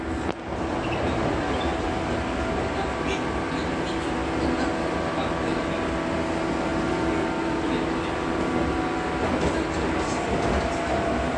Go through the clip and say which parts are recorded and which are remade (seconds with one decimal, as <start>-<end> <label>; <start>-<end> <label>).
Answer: 0.0-11.4 recorded